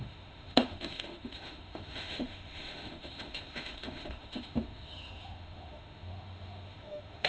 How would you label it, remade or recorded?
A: remade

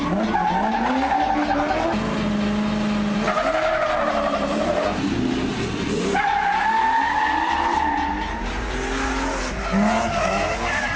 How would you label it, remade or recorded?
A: recorded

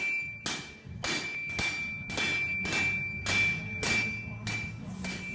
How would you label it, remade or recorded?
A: recorded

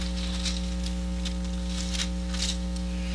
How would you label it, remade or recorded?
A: recorded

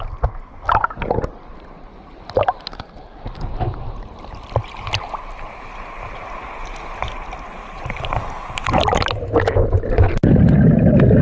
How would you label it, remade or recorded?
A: recorded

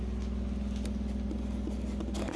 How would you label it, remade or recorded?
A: recorded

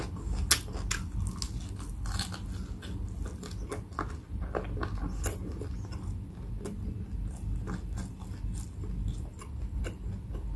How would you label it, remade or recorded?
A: recorded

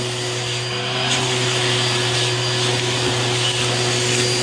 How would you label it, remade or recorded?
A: recorded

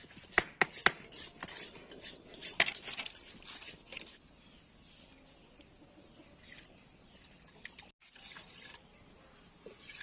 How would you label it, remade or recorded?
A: recorded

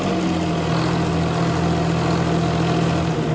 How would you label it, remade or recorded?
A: recorded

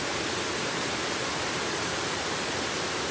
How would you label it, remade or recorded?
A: recorded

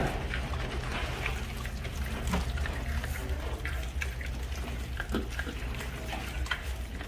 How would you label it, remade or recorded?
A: recorded